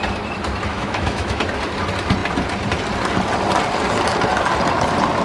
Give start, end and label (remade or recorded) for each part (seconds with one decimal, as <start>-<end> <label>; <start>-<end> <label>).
0.0-0.7 recorded; 0.7-1.4 remade; 1.4-5.2 recorded